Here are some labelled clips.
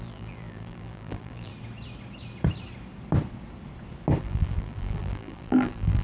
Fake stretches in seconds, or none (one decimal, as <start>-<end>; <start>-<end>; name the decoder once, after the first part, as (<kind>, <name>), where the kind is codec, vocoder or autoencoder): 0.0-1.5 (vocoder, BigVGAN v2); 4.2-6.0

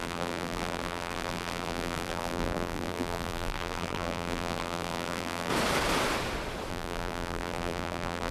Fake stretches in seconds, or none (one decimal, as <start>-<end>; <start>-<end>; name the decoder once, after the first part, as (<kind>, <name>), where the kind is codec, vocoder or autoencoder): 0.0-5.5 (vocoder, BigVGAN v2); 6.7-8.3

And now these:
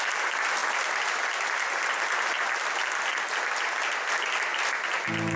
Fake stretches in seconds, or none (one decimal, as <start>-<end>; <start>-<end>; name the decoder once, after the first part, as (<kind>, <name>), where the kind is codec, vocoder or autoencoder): none

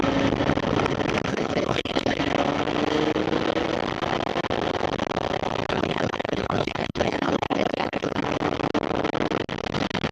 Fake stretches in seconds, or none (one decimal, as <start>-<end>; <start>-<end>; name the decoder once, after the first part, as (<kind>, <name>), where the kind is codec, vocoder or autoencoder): 1.3-2.2 (codec, HILCodec); 5.7-8.2